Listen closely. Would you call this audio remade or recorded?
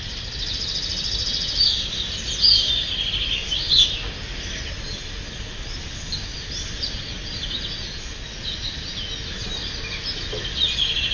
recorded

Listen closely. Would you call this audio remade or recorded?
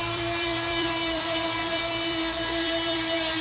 remade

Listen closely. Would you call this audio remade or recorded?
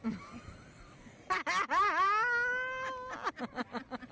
recorded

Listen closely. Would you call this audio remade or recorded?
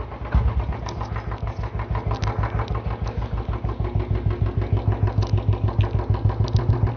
recorded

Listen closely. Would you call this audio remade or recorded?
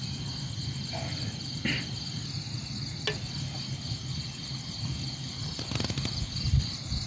recorded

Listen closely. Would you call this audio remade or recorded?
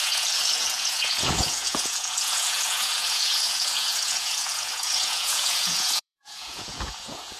remade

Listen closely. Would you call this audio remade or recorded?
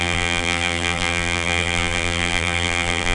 remade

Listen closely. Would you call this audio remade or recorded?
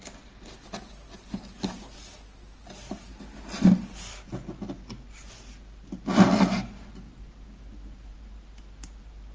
recorded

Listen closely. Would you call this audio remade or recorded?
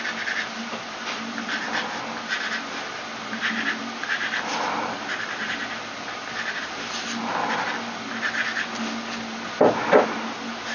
recorded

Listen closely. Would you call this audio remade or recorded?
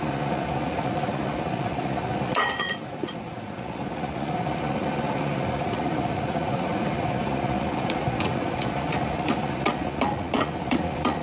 remade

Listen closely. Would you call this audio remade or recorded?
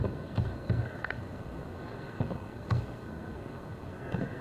remade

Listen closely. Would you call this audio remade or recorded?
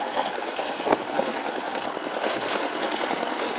remade